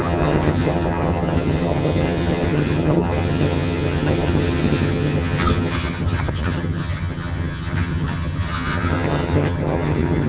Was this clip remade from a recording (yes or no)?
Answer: yes